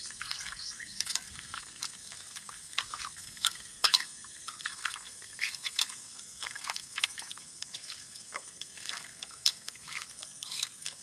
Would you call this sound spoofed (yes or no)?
yes